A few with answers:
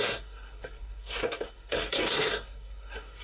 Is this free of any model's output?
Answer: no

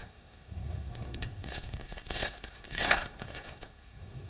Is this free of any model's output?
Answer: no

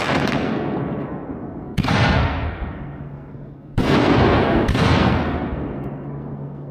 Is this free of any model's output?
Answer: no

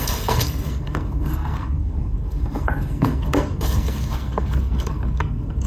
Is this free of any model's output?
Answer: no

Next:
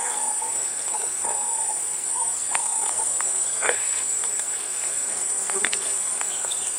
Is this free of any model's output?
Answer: no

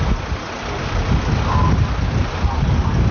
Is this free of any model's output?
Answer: yes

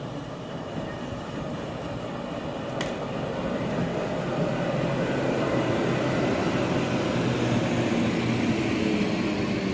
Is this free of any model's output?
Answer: yes